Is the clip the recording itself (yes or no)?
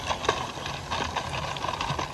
yes